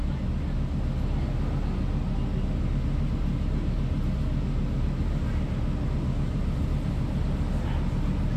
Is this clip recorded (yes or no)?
yes